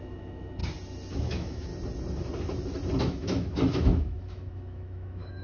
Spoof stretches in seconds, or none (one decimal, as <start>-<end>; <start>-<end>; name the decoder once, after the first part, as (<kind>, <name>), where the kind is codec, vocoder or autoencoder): 0.0-0.6 (autoencoder, DAC-VAE); 1.1-1.7; 3.0-5.4